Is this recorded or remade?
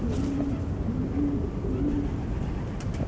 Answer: recorded